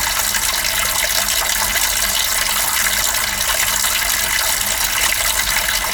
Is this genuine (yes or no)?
yes